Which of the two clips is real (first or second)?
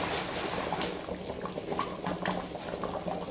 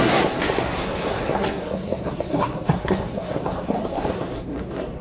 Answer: first